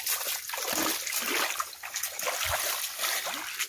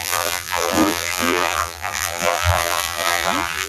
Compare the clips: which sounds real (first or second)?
first